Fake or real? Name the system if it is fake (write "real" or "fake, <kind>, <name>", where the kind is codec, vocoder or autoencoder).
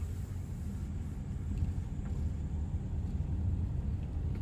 real